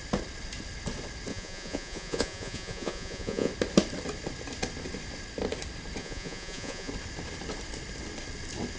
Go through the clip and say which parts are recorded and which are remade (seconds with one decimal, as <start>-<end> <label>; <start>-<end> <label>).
0.0-1.3 recorded; 1.3-3.5 remade; 3.5-6.0 recorded; 6.0-6.9 remade; 6.9-8.8 recorded